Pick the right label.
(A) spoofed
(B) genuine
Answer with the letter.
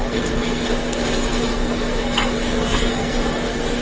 A